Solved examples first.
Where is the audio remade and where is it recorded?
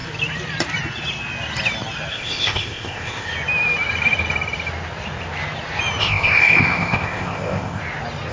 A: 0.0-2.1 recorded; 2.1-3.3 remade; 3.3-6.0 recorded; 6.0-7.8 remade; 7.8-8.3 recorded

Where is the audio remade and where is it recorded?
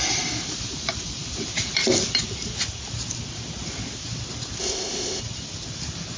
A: 0.0-4.6 recorded; 4.6-5.2 remade; 5.2-6.2 recorded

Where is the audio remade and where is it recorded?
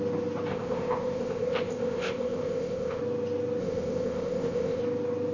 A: 0.0-0.5 recorded; 0.5-3.0 remade; 3.0-3.6 recorded; 3.6-4.8 remade; 4.8-5.3 recorded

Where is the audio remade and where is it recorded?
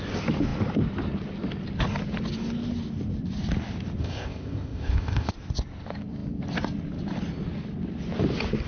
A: 0.0-4.0 recorded; 4.0-5.3 remade; 5.3-8.7 recorded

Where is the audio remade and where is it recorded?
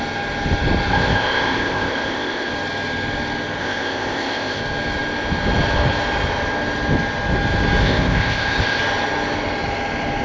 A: 0.0-0.9 recorded; 0.9-2.5 remade; 2.5-3.6 recorded; 3.6-4.6 remade; 4.6-7.8 recorded; 7.8-8.8 remade; 8.8-10.2 recorded